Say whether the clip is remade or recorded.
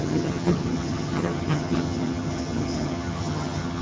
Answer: remade